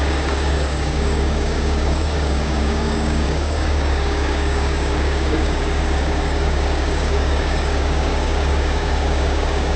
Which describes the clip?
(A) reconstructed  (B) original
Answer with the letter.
A